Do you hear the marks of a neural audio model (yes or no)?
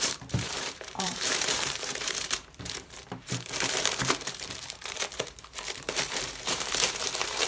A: yes